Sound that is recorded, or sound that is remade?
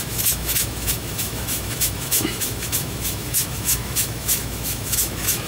remade